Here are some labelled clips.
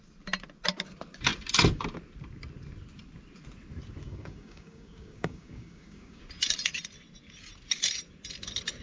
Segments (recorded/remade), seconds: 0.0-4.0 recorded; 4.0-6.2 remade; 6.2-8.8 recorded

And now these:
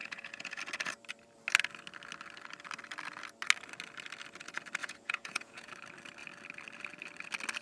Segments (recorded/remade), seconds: 0.0-0.6 remade; 0.6-4.8 recorded; 4.8-5.7 remade; 5.7-7.6 recorded